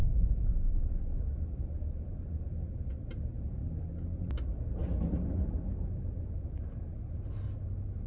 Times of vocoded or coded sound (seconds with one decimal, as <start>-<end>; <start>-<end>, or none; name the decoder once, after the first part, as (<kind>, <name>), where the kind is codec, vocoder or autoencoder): none